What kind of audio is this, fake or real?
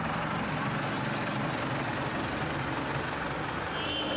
real